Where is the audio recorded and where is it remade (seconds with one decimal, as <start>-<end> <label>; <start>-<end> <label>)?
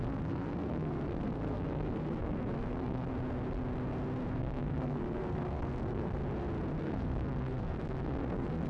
0.0-3.1 remade; 3.1-4.3 recorded; 4.3-6.2 remade; 6.2-6.8 recorded; 6.8-8.7 remade